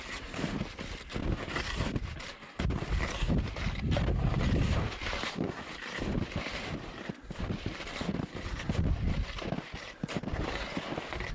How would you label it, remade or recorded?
recorded